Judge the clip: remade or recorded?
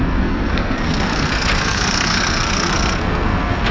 remade